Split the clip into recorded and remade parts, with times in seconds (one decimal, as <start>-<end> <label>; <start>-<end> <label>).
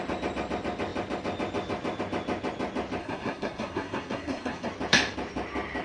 0.0-3.0 recorded; 3.0-4.7 remade; 4.7-5.8 recorded